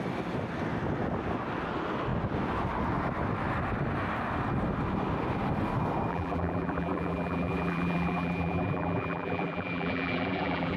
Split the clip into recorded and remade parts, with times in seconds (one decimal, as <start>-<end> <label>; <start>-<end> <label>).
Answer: 0.0-6.1 recorded; 6.1-10.8 remade